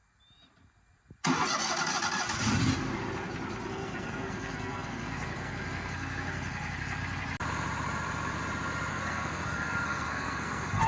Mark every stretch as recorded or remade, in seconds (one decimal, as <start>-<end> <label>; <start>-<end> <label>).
0.0-3.7 recorded; 3.7-7.0 remade; 7.0-8.9 recorded; 8.9-10.9 remade